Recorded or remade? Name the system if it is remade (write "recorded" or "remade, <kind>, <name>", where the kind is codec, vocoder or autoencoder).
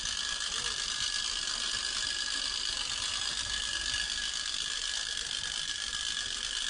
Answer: recorded